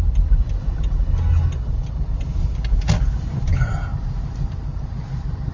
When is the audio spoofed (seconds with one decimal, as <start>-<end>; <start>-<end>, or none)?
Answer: none